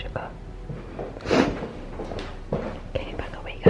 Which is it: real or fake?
real